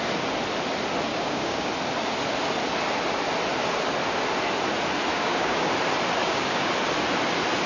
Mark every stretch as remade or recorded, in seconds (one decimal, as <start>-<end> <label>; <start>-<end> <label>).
0.0-1.1 recorded; 1.1-1.7 remade; 1.7-5.1 recorded; 5.1-5.7 remade; 5.7-6.2 recorded; 6.2-6.7 remade; 6.7-7.7 recorded